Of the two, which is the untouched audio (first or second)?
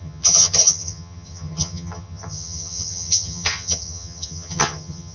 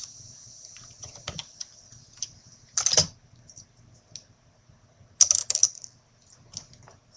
second